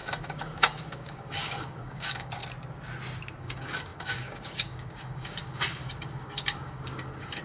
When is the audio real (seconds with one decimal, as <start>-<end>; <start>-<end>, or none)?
2.4-3.4

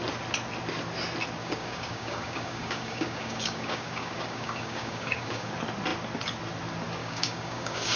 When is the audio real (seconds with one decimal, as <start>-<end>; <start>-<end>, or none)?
0.0-1.4; 5.5-7.0

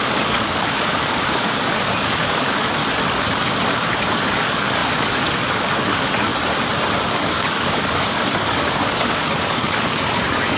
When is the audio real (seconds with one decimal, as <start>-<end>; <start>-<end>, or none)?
2.8-3.8; 6.3-6.9

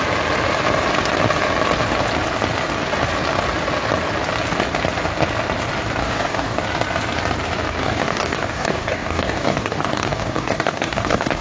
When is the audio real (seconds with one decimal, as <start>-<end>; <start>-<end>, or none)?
0.0-6.0; 6.6-7.8

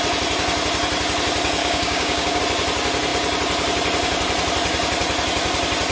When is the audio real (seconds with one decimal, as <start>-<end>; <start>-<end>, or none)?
0.0-1.6; 2.4-5.9

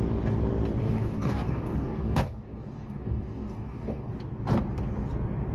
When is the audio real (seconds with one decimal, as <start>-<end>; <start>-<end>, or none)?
0.0-0.8; 4.1-5.5